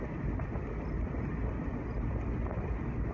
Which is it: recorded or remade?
recorded